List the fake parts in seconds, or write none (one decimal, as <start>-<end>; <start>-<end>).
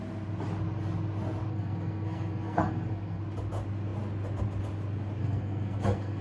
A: 1.5-3.2; 5.2-6.2